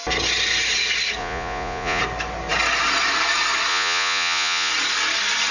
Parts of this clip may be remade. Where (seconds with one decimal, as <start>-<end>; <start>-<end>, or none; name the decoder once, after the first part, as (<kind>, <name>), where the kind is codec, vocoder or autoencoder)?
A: 1.2-2.0 (vocoder, Vocos); 3.7-4.7